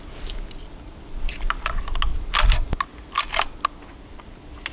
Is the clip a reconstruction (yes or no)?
no